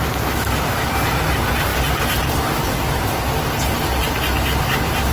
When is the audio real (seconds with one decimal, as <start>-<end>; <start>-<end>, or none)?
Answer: 0.0-5.1